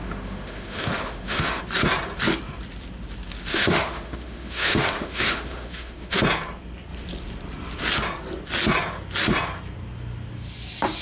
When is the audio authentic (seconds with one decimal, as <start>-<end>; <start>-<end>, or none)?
1.6-3.5; 6.2-11.0